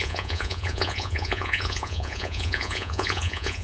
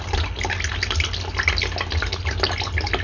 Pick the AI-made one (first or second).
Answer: first